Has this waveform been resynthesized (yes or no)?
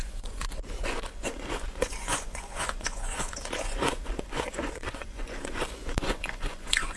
yes